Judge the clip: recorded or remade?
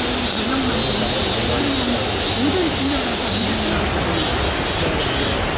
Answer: recorded